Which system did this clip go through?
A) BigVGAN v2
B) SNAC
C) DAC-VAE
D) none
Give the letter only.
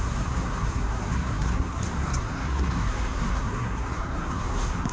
B